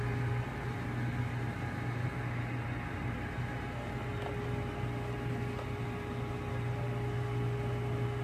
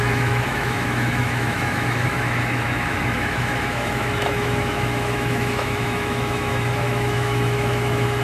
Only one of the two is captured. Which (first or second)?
first